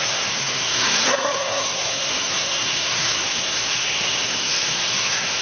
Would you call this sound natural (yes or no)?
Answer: no